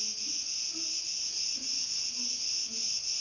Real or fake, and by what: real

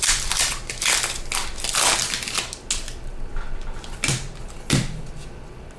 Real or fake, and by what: real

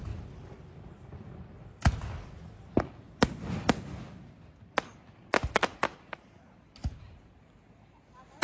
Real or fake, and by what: real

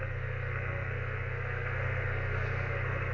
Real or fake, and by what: fake, codec, SNAC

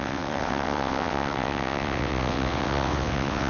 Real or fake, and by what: fake, vocoder, WaveNeXt